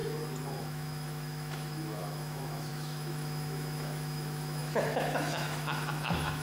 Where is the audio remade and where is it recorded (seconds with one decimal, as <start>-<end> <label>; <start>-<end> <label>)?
0.0-0.6 recorded; 0.6-6.4 remade